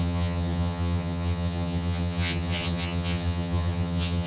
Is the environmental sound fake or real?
fake